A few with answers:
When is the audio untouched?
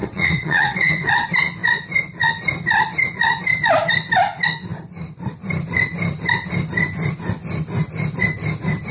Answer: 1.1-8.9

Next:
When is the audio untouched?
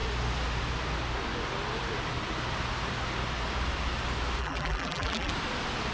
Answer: 0.0-4.4; 5.3-5.9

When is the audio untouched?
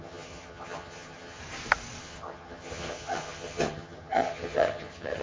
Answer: 1.4-2.0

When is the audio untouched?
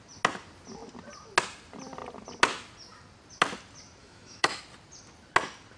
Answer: 0.0-4.0; 4.6-5.8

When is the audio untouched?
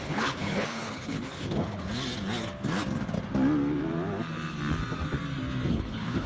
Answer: 1.9-5.7